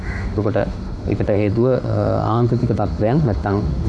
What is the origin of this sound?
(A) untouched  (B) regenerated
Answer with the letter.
B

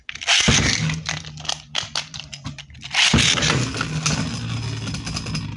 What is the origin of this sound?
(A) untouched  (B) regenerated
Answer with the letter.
A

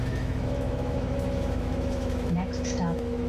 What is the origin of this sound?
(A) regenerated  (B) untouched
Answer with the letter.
A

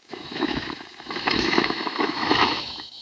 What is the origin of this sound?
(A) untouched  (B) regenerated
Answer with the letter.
B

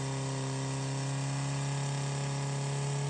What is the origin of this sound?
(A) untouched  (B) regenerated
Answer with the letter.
A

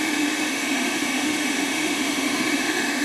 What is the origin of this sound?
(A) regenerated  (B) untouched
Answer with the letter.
A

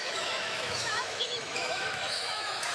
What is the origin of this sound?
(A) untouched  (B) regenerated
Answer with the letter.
B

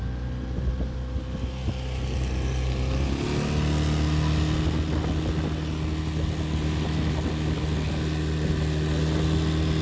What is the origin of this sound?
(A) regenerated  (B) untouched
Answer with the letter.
B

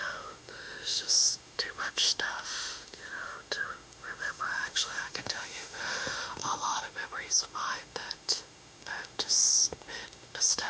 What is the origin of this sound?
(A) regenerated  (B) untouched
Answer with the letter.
A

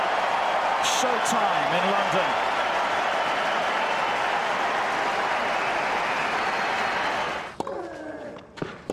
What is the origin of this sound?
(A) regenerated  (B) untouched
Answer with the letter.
B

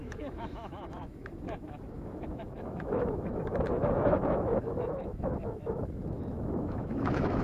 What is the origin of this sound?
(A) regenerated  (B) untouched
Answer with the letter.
A